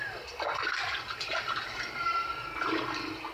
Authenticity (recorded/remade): remade